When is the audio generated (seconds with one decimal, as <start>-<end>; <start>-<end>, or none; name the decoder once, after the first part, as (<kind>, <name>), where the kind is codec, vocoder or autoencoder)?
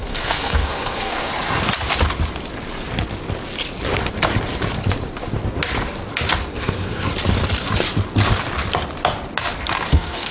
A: 0.0-1.3 (codec, SNAC); 6.5-7.1; 9.9-10.3